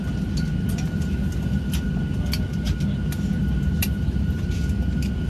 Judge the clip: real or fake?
real